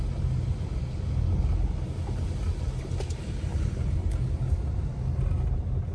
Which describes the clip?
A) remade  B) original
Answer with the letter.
B